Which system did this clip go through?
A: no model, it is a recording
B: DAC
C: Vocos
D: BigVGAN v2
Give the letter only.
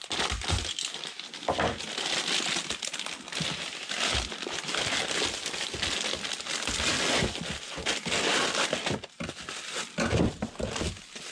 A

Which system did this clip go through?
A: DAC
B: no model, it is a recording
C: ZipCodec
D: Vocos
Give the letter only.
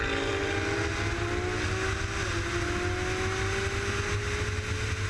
B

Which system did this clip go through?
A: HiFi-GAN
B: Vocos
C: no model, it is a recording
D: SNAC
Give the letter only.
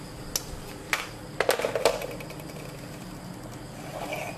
C